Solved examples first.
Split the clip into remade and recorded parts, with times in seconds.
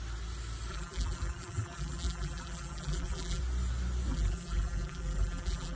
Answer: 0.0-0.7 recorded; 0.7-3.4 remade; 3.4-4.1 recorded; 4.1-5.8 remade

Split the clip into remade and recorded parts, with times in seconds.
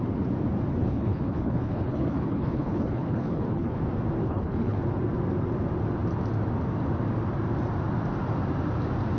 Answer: 0.0-0.8 recorded; 0.8-3.8 remade; 3.8-4.2 recorded; 4.2-4.8 remade; 4.8-9.2 recorded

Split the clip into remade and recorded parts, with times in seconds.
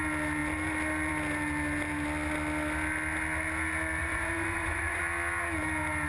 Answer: 0.0-4.0 recorded; 4.0-5.0 remade; 5.0-6.1 recorded